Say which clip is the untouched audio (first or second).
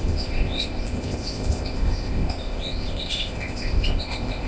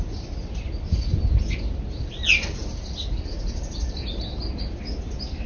second